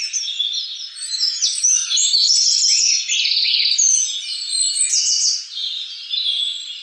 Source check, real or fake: real